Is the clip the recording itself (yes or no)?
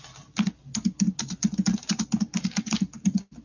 yes